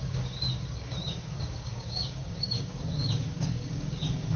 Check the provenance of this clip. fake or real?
fake